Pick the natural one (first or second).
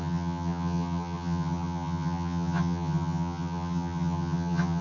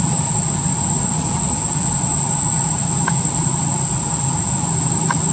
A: second